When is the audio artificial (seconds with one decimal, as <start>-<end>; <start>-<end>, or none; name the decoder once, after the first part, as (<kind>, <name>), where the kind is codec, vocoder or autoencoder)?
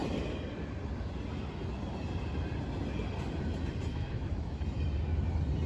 3.9-4.6 (autoencoder, DAC-VAE)